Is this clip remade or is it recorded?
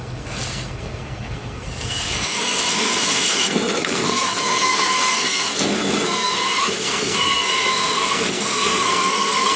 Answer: remade